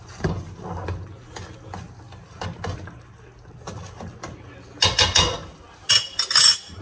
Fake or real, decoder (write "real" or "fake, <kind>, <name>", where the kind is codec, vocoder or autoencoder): real